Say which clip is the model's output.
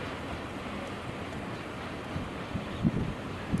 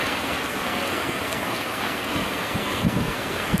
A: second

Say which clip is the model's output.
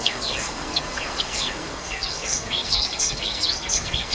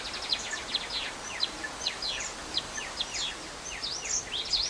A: first